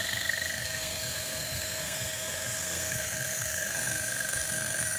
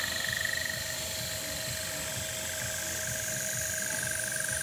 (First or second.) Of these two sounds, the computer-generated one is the first